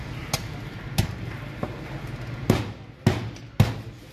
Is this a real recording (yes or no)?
yes